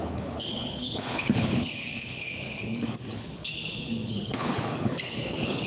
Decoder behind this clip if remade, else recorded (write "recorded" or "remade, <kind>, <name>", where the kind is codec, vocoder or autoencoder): remade, codec, HILCodec